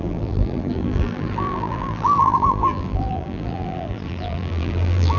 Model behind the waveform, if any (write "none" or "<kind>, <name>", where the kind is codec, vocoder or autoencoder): vocoder, BigVGAN v2